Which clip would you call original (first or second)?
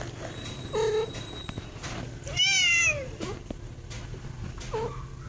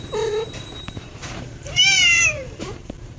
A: first